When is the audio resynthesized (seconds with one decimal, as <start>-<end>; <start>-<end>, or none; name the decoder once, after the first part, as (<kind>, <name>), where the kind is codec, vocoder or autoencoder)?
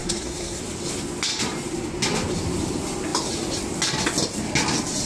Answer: 0.0-0.6 (codec, SNAC)